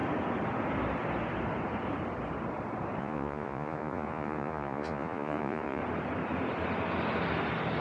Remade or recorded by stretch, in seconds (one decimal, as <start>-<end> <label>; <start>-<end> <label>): 0.0-3.0 recorded; 3.0-5.8 remade; 5.8-7.8 recorded